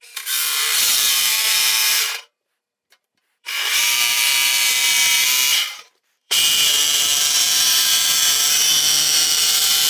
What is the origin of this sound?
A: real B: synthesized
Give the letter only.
B